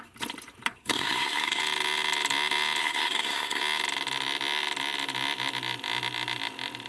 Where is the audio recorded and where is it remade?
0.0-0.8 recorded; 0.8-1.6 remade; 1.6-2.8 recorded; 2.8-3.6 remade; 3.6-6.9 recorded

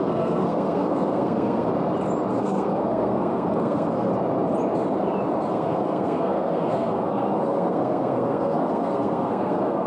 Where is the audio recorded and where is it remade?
0.0-1.7 remade; 1.7-2.3 recorded; 2.3-4.1 remade; 4.1-5.5 recorded; 5.5-9.9 remade